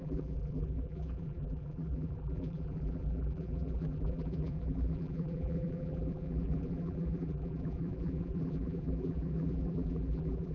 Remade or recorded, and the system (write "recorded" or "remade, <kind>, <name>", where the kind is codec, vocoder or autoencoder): remade, vocoder, BigVGAN v2